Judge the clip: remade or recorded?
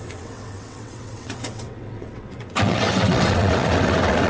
remade